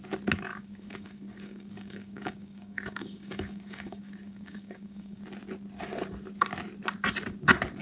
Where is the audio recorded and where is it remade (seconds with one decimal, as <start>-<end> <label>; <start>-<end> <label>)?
0.0-0.5 recorded; 0.5-5.2 remade; 5.2-7.8 recorded